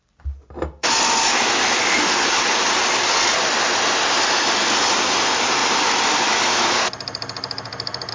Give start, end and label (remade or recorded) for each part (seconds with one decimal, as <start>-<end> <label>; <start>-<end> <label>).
0.0-8.1 recorded